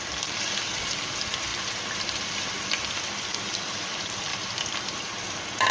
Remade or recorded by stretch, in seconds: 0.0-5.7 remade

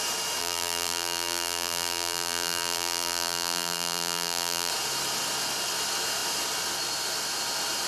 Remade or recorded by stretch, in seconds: 0.0-0.4 recorded; 0.4-4.7 remade; 4.7-7.9 recorded